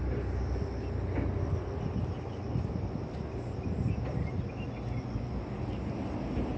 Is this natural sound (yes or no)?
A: yes